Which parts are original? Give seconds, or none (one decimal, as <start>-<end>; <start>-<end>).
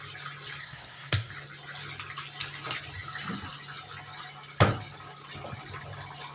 0.0-0.6; 1.3-6.3